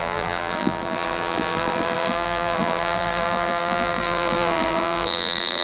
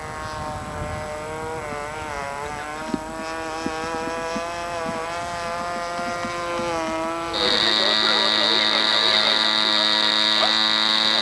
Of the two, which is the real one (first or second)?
second